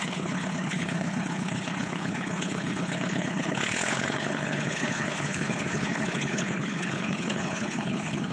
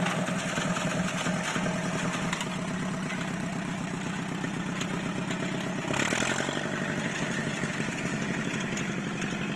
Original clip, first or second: second